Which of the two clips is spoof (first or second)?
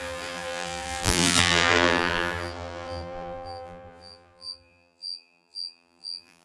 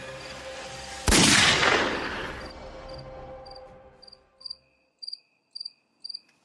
first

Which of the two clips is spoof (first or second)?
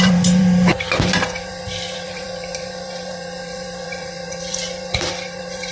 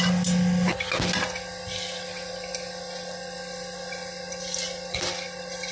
first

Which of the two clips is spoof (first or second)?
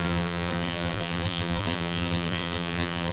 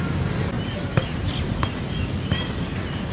first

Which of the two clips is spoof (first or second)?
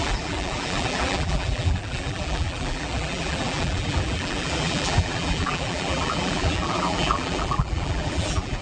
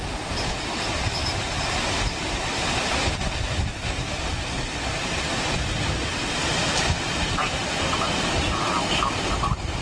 first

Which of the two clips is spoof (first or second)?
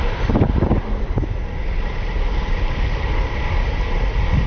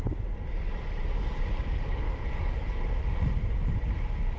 first